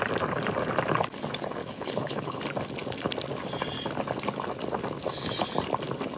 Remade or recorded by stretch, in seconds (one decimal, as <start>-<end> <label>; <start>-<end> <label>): 0.0-1.6 recorded; 1.6-2.4 remade; 2.4-6.2 recorded